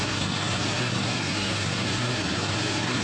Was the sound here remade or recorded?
remade